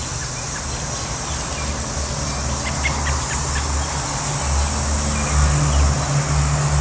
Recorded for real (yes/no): yes